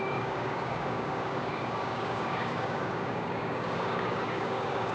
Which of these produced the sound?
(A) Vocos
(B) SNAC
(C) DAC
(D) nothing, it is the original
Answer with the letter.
C